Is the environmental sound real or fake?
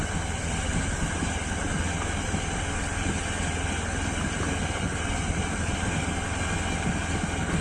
real